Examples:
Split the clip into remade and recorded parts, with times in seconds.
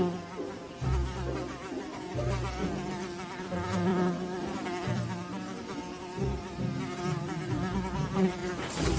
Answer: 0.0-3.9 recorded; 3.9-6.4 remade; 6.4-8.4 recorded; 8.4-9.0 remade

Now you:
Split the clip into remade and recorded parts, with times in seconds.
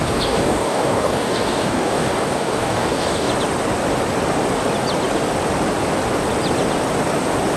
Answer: 0.0-3.3 remade; 3.3-7.6 recorded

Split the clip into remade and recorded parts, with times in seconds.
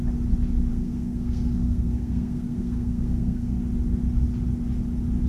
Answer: 0.0-0.7 recorded; 0.7-3.6 remade; 3.6-5.3 recorded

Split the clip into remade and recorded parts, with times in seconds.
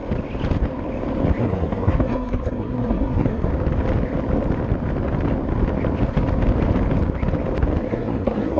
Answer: 0.0-1.4 recorded; 1.4-3.5 remade; 3.5-7.9 recorded; 7.9-8.6 remade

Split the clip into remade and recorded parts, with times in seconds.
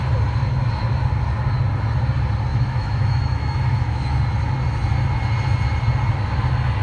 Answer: 0.0-2.5 recorded; 2.5-4.2 remade; 4.2-6.8 recorded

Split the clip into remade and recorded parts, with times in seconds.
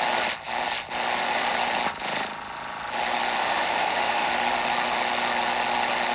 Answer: 0.0-3.4 recorded; 3.4-4.3 remade; 4.3-6.1 recorded